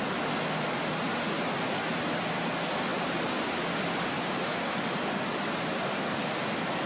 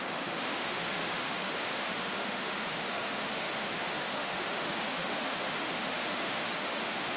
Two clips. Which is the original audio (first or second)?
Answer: first